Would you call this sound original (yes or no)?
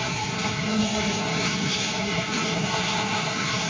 no